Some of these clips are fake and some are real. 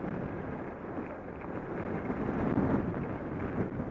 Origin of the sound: real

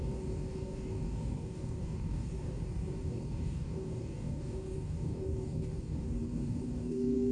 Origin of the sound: fake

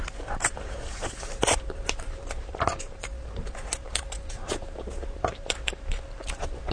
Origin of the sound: fake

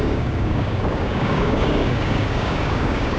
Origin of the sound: fake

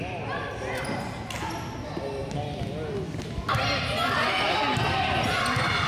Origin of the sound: real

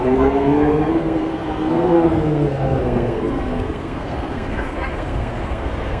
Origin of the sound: fake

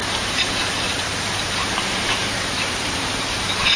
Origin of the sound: fake